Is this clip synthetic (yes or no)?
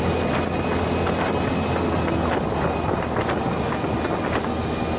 no